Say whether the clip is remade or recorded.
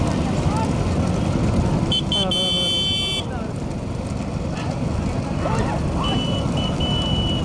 recorded